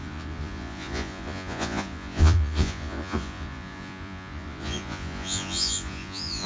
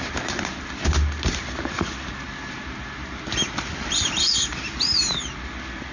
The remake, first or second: first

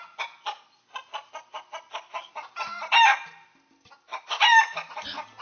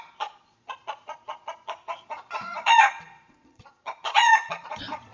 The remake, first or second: second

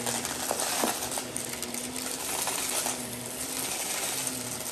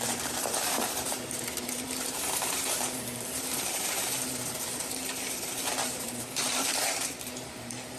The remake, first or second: second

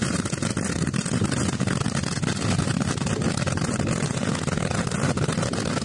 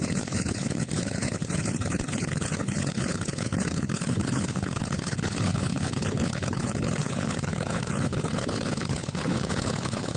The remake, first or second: second